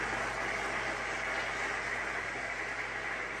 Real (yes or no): yes